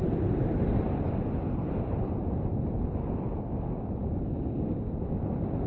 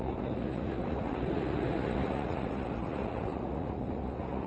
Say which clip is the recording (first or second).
first